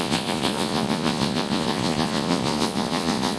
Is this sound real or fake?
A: fake